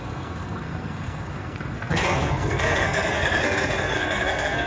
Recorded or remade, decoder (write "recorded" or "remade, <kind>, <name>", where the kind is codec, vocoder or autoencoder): remade, codec, SNAC